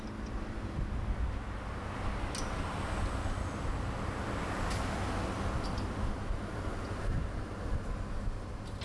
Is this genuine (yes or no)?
yes